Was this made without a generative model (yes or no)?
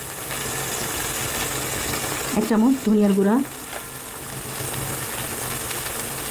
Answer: yes